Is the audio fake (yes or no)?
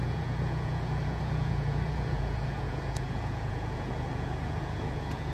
yes